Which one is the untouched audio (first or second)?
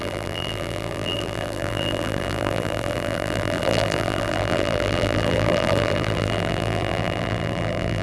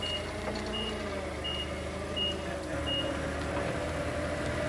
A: second